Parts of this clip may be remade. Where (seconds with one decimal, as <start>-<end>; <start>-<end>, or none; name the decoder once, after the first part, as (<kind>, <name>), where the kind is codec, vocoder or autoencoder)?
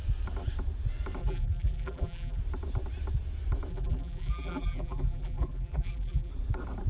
1.2-2.4 (vocoder, BigVGAN v2); 3.7-6.3